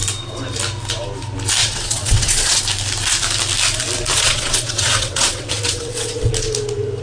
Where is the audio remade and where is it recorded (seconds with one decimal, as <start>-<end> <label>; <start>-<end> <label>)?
0.0-1.6 recorded; 1.6-2.6 remade; 2.6-4.1 recorded; 4.1-6.3 remade; 6.3-7.0 recorded